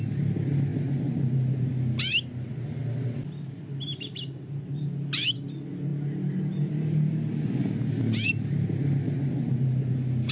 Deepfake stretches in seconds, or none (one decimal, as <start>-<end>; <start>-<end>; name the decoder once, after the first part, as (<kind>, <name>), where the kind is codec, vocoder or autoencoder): none